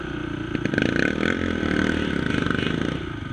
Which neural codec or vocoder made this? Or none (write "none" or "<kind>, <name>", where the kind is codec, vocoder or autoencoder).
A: none